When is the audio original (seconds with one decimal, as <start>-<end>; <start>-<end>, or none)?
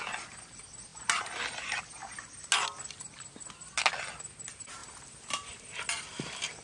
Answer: 0.0-6.6